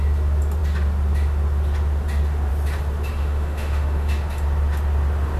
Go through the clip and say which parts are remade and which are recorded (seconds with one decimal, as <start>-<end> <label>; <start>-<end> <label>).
0.0-3.2 recorded; 3.2-4.1 remade; 4.1-5.4 recorded